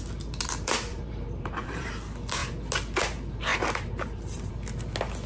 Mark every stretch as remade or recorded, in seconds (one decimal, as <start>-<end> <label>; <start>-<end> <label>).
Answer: 0.0-0.9 recorded; 0.9-1.9 remade; 1.9-3.5 recorded; 3.5-4.5 remade; 4.5-5.3 recorded